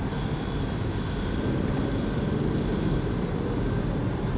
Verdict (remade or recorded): recorded